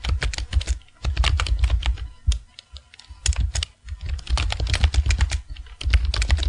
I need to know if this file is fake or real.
real